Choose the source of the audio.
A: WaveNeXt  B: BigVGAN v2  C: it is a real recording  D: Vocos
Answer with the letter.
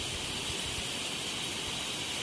C